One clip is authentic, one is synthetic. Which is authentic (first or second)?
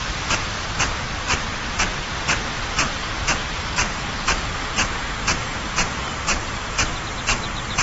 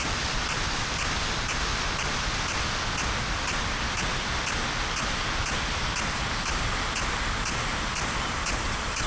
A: second